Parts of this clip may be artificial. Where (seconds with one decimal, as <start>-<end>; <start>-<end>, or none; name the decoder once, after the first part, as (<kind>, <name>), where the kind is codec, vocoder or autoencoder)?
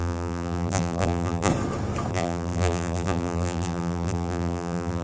0.0-1.5 (vocoder, BigVGAN v2); 2.1-5.0